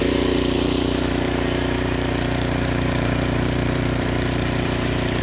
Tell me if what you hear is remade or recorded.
remade